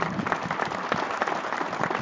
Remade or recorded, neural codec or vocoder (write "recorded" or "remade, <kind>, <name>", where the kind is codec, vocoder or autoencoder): recorded